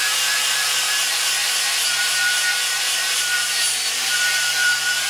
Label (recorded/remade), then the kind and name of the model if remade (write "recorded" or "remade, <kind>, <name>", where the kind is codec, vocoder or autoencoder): remade, vocoder, BigVGAN v2